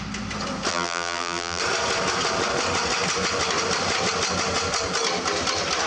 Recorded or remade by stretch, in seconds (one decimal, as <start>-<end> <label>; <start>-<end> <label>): 0.0-0.7 recorded; 0.7-1.6 remade; 1.6-5.9 recorded